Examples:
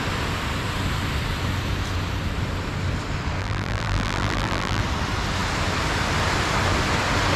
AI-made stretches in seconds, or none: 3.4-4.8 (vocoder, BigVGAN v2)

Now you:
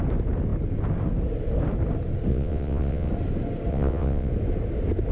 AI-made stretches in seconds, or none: 2.3-3.1 (vocoder, WaveNeXt); 3.7-4.3